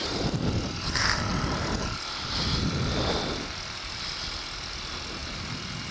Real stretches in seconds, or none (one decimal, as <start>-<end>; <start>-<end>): 0.0-1.3; 4.8-5.2